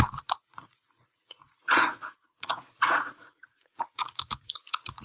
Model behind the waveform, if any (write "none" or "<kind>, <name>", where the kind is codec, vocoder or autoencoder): vocoder, Vocos